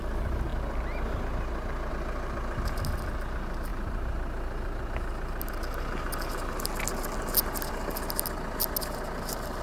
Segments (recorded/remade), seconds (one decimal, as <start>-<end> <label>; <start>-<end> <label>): 0.0-9.6 recorded